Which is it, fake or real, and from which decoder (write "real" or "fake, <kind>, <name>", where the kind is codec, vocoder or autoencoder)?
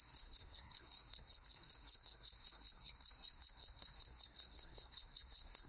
fake, codec, SNAC